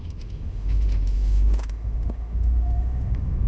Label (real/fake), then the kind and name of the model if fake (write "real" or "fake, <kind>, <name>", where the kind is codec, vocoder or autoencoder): fake, autoencoder, DAC-VAE